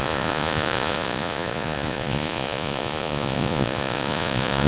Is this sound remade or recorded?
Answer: remade